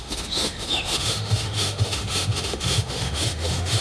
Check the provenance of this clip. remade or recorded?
remade